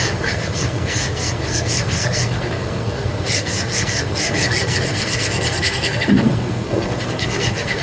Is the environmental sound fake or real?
fake